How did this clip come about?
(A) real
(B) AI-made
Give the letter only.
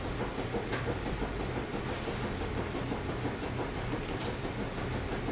A